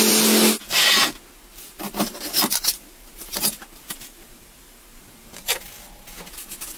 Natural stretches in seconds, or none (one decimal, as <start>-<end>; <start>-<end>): 0.0-1.5; 5.6-6.8